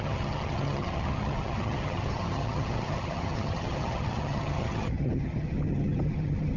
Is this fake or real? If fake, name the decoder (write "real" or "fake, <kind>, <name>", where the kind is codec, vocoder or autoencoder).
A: fake, vocoder, HiFi-GAN